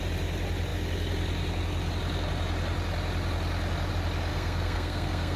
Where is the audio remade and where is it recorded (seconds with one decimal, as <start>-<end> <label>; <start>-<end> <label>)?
0.0-4.3 recorded; 4.3-5.4 remade